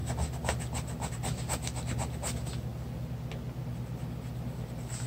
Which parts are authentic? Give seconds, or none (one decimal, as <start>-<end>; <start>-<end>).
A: 0.0-5.1